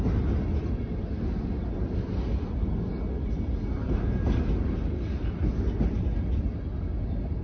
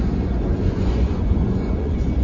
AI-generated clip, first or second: second